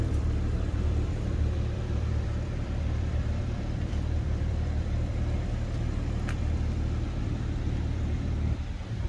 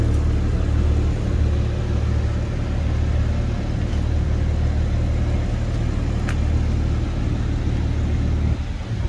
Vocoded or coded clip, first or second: first